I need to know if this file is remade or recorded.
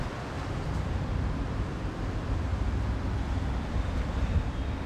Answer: remade